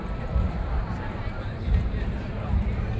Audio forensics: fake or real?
fake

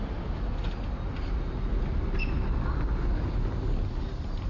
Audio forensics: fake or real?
real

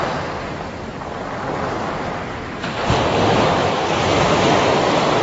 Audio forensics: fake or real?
real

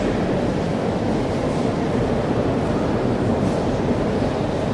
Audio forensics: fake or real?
fake